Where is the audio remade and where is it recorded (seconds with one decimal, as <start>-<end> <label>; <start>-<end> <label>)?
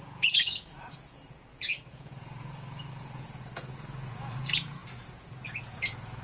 0.0-6.2 remade